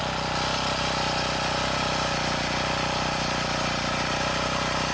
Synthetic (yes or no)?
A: no